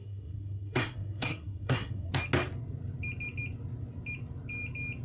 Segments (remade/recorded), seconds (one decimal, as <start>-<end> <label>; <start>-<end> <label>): 0.0-2.1 remade; 2.1-5.0 recorded